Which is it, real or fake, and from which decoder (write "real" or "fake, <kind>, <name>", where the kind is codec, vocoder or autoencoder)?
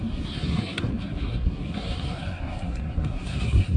fake, codec, SNAC